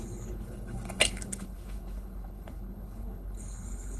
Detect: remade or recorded remade